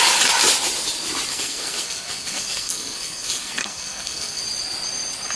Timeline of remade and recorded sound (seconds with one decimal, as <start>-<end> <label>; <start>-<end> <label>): 0.0-1.3 recorded; 1.3-4.4 remade; 4.4-5.4 recorded